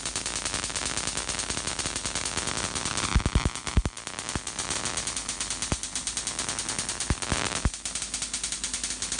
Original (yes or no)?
yes